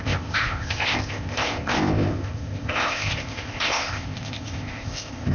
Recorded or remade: remade